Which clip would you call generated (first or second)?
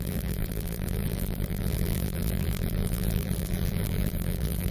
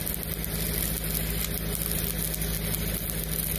first